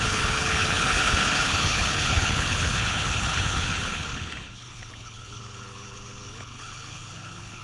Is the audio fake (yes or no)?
yes